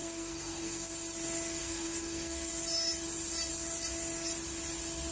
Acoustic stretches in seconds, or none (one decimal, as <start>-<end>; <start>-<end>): 0.9-1.6; 2.5-5.1